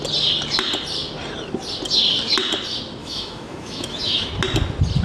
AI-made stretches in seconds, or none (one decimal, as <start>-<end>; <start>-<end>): 3.0-4.3